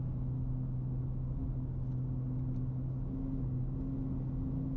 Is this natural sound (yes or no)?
yes